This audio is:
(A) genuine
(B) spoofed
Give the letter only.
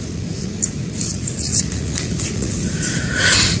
B